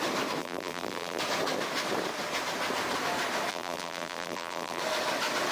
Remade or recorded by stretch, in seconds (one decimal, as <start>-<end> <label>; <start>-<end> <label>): 0.0-0.4 recorded; 0.4-1.2 remade; 1.2-3.5 recorded; 3.5-4.8 remade; 4.8-5.5 recorded